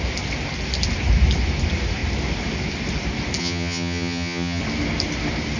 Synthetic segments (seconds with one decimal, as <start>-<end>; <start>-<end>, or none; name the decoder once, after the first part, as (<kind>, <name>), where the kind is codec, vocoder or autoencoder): 3.4-4.6 (vocoder, HiFi-GAN)